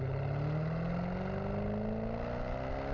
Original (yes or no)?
yes